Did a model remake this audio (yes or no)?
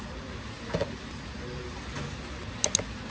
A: no